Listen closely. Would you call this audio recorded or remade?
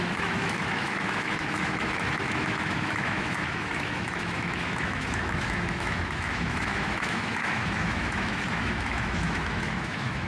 remade